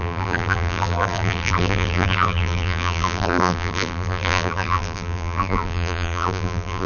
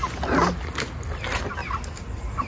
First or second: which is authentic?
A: second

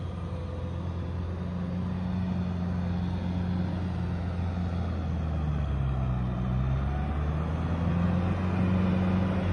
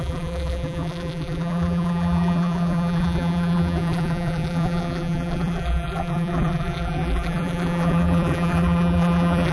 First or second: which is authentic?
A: first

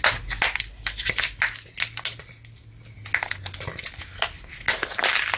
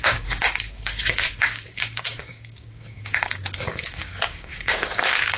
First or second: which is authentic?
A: first